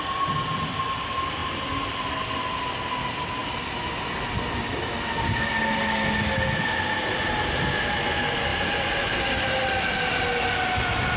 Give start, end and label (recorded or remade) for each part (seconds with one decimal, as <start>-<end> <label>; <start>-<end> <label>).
0.0-1.4 recorded; 1.4-2.3 remade; 2.3-8.5 recorded; 8.5-10.1 remade; 10.1-11.2 recorded

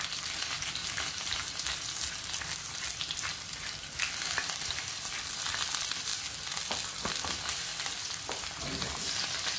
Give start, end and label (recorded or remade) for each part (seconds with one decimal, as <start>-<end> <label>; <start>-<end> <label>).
0.0-0.8 remade; 0.8-2.6 recorded; 2.6-6.1 remade; 6.1-7.0 recorded; 7.0-9.6 remade